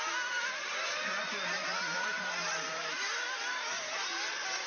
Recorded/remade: recorded